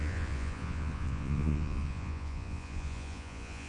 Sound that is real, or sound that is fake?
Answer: fake